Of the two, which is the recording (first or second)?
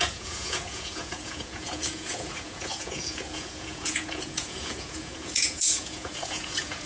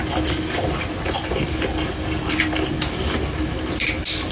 second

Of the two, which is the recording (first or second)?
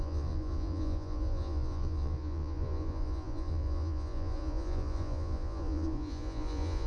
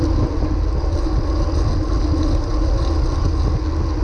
second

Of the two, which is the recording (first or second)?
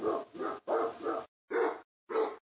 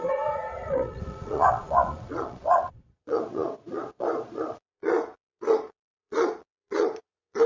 first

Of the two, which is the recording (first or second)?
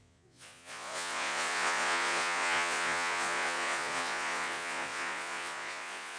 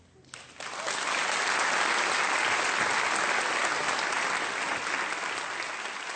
second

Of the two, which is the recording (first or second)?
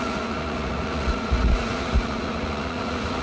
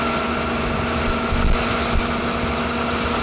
second